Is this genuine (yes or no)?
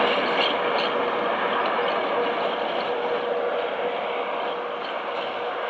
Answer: yes